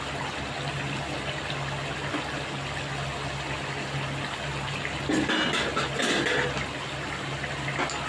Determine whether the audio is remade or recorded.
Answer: recorded